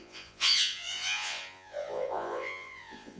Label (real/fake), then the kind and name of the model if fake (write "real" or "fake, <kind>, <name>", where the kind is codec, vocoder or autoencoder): fake, vocoder, Vocos